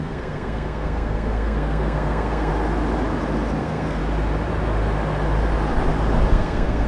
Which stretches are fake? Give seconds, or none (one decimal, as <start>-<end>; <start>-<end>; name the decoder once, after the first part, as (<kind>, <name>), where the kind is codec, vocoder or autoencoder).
0.0-2.5 (codec, SNAC); 3.6-4.0; 6.3-6.9